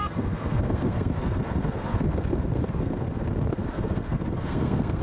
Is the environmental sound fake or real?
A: fake